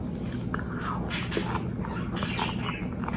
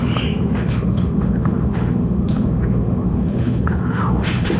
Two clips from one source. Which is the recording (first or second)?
first